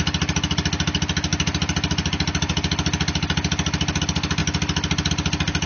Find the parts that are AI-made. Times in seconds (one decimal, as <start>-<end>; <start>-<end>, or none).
none